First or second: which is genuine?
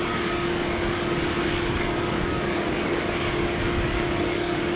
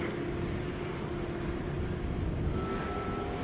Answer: second